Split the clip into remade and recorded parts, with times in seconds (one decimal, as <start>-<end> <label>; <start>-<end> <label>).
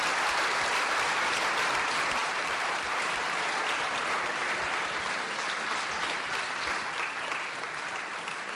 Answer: 0.0-2.2 recorded; 2.2-3.4 remade; 3.4-8.6 recorded